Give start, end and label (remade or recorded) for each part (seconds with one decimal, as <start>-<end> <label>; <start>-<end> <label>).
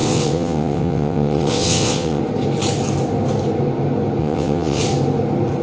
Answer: 0.0-2.2 remade; 2.2-4.2 recorded; 4.2-4.8 remade; 4.8-5.6 recorded